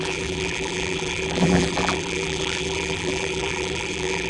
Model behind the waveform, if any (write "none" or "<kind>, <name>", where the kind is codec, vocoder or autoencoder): vocoder, BigVGAN v2